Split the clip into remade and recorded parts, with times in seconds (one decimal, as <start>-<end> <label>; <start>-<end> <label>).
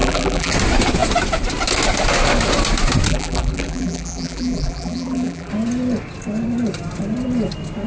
0.0-0.5 remade; 0.5-3.1 recorded; 3.1-5.5 remade; 5.5-7.9 recorded